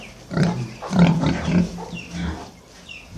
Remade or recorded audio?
remade